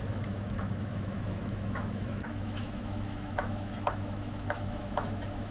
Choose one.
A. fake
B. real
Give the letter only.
A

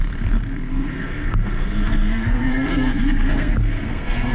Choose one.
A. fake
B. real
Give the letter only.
A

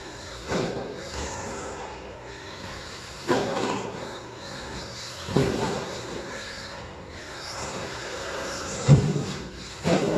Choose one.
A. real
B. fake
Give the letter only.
B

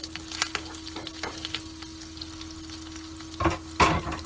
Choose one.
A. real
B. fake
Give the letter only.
A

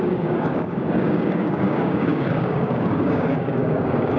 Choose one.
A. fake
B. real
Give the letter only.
A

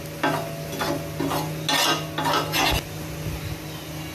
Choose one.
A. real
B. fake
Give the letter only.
A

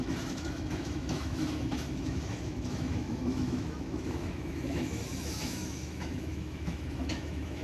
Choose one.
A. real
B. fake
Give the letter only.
B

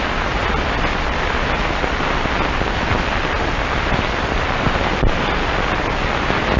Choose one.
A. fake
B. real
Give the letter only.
A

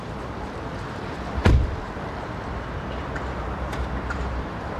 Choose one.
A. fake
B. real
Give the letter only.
A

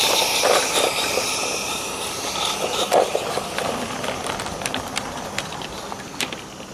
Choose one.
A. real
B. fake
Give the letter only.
A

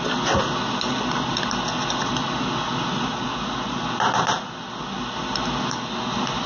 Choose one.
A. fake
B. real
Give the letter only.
B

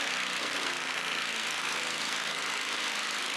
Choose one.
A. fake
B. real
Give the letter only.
A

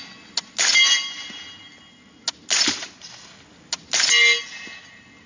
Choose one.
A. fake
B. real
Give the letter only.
B